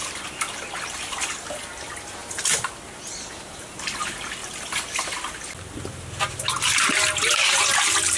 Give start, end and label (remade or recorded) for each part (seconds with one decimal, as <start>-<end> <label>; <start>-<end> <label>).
0.0-8.2 recorded